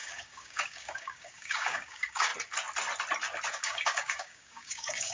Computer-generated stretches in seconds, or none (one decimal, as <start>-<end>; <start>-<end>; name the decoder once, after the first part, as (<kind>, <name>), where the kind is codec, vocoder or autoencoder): 0.0-2.3 (codec, DAC); 3.5-5.1